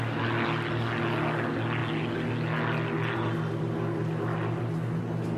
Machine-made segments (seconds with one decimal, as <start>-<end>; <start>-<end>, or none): none